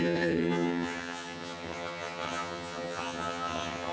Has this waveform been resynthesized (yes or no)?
yes